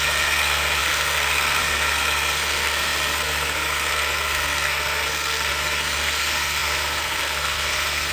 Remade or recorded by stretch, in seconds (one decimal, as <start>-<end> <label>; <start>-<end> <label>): 0.0-8.1 remade